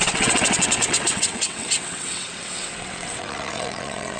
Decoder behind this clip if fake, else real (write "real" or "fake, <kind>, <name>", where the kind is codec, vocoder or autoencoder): fake, vocoder, WaveNeXt